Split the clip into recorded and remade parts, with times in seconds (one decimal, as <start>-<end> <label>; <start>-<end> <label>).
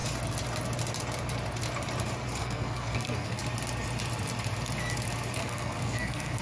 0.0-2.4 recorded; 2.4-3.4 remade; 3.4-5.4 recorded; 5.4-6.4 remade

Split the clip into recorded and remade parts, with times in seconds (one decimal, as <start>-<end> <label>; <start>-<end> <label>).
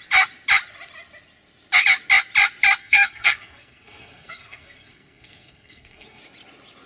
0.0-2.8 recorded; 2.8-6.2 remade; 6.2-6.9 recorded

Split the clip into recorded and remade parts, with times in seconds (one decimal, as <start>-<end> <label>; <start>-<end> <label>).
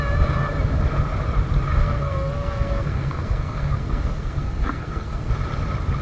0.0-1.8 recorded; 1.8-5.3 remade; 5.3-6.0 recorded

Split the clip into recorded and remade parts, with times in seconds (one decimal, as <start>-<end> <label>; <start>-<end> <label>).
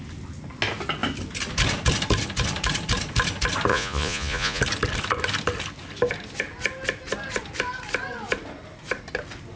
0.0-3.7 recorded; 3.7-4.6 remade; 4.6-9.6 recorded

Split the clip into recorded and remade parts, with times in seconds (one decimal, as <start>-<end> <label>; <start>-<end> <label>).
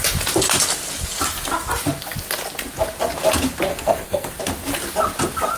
0.0-3.7 recorded; 3.7-4.4 remade; 4.4-5.6 recorded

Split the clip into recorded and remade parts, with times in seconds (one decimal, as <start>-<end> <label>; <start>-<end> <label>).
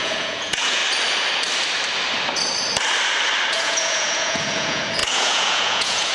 0.0-0.8 remade; 0.8-3.5 recorded; 3.5-6.1 remade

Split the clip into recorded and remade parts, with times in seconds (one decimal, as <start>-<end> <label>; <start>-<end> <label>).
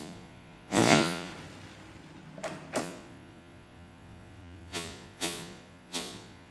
0.0-1.3 remade; 1.3-2.8 recorded; 2.8-6.5 remade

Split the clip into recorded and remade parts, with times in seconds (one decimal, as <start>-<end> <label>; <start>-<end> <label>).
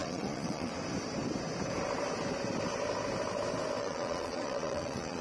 0.0-0.7 remade; 0.7-3.8 recorded; 3.8-5.2 remade